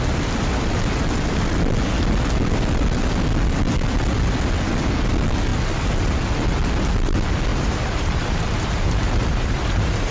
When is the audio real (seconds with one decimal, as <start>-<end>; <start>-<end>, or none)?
0.0-7.5